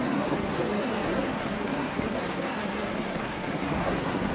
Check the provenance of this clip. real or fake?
fake